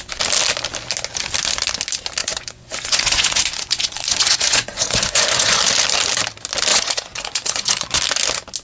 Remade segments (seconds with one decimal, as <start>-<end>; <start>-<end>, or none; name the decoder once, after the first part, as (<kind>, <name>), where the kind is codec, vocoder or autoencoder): 2.2-5.6 (vocoder, Vocos); 6.7-8.0